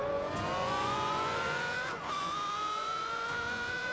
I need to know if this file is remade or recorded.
remade